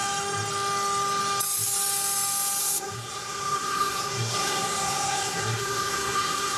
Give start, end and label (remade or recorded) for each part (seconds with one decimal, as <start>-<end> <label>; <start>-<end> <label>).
0.0-2.6 recorded; 2.6-6.6 remade